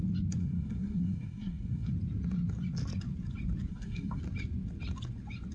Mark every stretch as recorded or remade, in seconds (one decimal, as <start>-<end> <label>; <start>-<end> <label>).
0.0-0.4 recorded; 0.4-1.9 remade; 1.9-3.7 recorded; 3.7-4.2 remade; 4.2-5.5 recorded